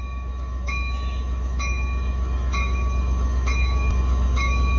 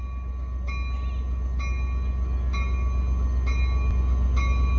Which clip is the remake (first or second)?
first